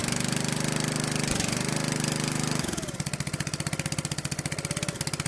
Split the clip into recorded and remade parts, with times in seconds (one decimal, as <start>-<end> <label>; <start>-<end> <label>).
0.0-5.3 recorded